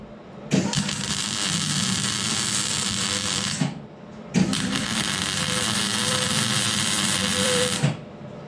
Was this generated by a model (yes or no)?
yes